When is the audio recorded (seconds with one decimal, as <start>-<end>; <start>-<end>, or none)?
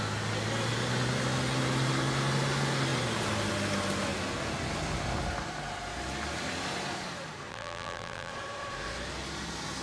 0.0-7.5; 8.3-9.8